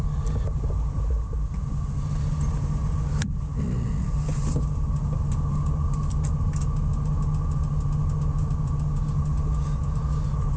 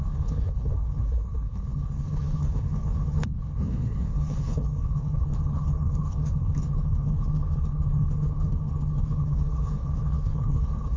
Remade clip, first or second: second